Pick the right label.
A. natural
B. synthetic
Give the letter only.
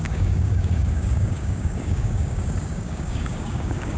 B